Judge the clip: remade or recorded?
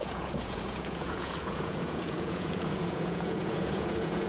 remade